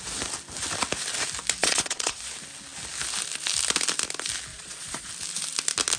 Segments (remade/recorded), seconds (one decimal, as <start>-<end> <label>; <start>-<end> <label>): 0.0-1.6 recorded; 1.6-2.2 remade; 2.2-4.5 recorded; 4.5-5.1 remade; 5.1-6.0 recorded